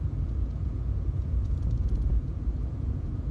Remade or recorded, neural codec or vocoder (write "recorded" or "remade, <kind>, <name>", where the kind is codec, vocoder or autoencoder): remade, vocoder, Vocos